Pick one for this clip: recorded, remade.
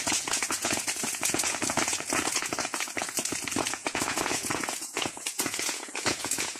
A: remade